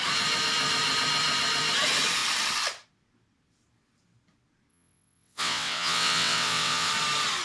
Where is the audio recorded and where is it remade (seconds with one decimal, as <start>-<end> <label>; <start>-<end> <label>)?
0.0-4.7 recorded; 4.7-6.9 remade; 6.9-7.4 recorded